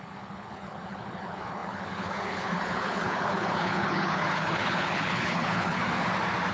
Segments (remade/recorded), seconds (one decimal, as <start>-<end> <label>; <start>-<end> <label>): 0.0-5.8 remade; 5.8-6.5 recorded